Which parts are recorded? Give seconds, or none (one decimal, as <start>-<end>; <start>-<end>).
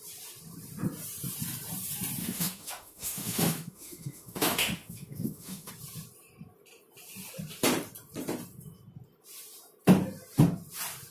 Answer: 0.0-2.2; 5.7-11.1